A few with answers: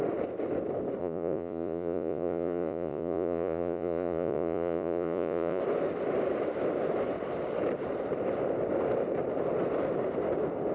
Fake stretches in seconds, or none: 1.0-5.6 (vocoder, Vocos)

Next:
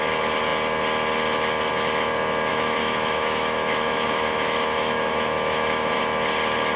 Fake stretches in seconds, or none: 2.5-6.0 (autoencoder, DAC-VAE)

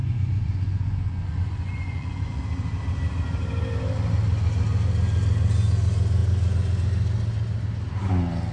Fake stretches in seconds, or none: 0.0-2.4 (vocoder, Vocos)

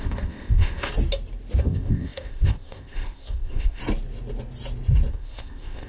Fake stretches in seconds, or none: 0.0-0.9 (codec, ZipCodec); 1.6-3.8; 5.1-5.9